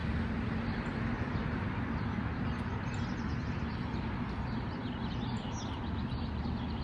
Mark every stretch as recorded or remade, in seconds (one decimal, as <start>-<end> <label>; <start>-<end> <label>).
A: 0.0-0.6 recorded; 0.6-1.4 remade; 1.4-5.0 recorded; 5.0-6.8 remade